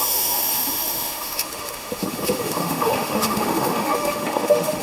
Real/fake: fake